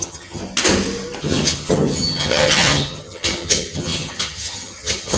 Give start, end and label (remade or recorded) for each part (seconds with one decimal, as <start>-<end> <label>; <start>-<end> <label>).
0.0-0.4 remade; 0.4-1.2 recorded; 1.2-5.2 remade